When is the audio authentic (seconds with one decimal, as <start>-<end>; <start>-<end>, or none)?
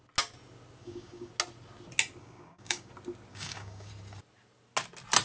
0.0-0.8; 1.3-2.2; 2.9-3.3; 3.9-5.2